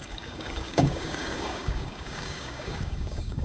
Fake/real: fake